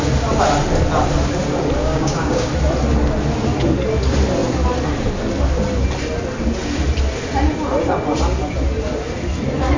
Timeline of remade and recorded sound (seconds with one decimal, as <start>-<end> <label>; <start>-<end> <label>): 0.0-1.8 recorded; 1.8-2.5 remade; 2.5-9.8 recorded